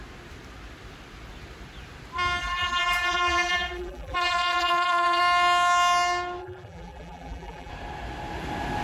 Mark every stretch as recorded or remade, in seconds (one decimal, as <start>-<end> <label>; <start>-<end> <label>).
0.0-2.4 recorded; 2.4-5.2 remade; 5.2-6.4 recorded; 6.4-7.7 remade; 7.7-8.8 recorded